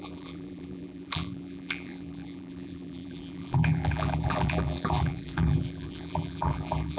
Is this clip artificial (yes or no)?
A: yes